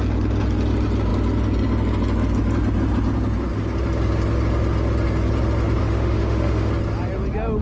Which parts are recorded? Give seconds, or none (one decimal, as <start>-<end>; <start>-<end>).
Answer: 0.0-5.8; 6.7-7.6

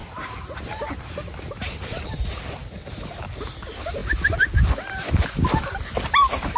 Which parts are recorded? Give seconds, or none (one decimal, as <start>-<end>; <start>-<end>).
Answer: 0.0-6.6

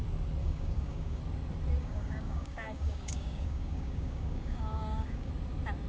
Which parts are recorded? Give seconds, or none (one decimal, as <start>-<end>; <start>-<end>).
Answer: 0.0-0.4; 1.2-1.8; 5.3-5.9

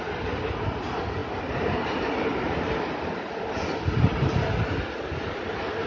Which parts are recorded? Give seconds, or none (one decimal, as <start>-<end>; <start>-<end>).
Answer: 0.0-5.9

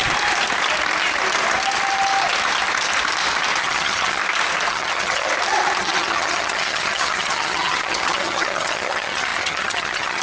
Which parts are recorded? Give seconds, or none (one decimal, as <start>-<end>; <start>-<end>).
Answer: 0.0-3.6; 4.2-4.7; 5.3-5.8

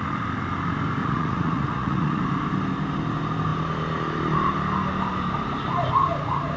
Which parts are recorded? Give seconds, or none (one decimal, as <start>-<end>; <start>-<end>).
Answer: 0.0-1.0; 2.2-6.6

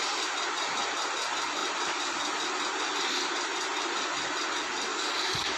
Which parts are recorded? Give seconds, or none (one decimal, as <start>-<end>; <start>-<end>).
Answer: 0.0-4.9

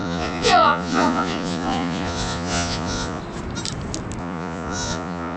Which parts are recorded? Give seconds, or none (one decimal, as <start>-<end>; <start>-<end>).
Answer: 3.2-4.2